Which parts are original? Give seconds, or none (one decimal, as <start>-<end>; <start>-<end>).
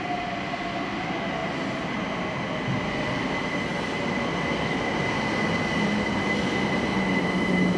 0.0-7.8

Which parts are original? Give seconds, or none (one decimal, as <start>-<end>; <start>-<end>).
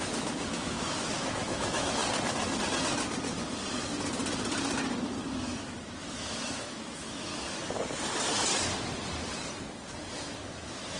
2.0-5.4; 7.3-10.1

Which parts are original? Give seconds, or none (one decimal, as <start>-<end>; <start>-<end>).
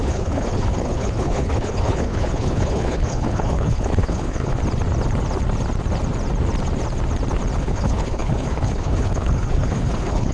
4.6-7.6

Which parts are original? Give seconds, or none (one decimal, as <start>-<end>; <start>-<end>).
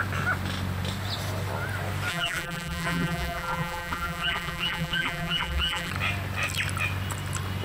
0.0-2.1; 5.9-7.6